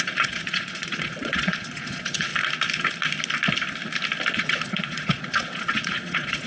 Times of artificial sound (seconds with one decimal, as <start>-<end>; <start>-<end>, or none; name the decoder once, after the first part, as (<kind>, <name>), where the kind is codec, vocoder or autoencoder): 0.0-2.3 (vocoder, Vocos); 4.3-6.5